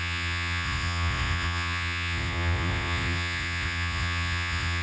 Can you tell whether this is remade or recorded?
remade